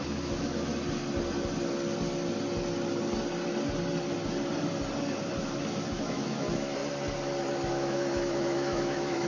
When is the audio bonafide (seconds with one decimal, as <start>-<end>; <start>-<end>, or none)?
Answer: 0.7-5.4; 6.8-7.7